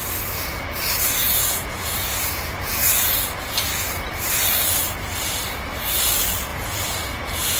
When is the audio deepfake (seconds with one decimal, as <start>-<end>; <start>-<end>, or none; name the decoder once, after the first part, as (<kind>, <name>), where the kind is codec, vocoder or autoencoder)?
1.2-3.5 (vocoder, Vocos); 6.5-7.6